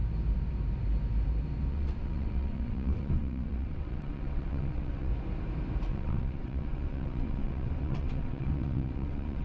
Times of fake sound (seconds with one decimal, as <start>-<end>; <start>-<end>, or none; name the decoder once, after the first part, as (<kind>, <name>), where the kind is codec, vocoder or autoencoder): 1.7-5.1 (vocoder, WaveNeXt); 5.8-9.4